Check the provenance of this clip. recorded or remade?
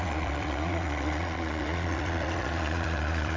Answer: remade